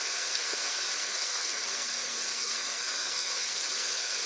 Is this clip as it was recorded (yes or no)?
no